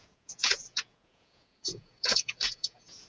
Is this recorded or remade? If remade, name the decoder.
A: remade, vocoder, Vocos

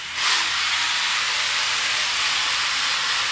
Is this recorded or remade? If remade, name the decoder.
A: remade, vocoder, BigVGAN v2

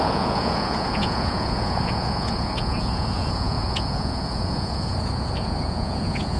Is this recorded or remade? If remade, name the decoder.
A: remade, vocoder, Vocos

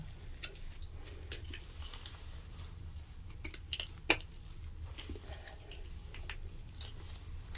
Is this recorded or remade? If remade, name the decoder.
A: recorded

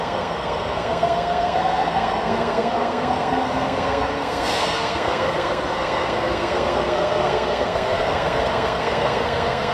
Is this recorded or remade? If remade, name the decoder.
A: remade, codec, SNAC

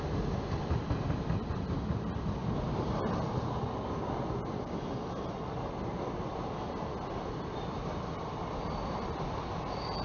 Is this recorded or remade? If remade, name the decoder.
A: recorded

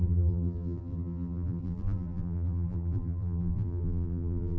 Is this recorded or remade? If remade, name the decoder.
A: remade, vocoder, BigVGAN v2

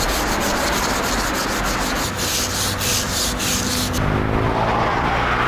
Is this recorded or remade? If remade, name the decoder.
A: recorded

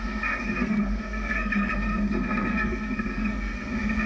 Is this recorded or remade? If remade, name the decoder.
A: remade, codec, SNAC